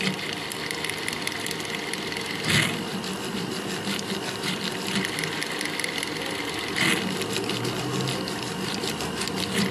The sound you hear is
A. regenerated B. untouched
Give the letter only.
B